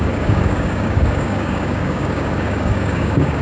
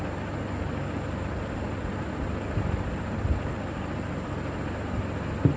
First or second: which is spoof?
first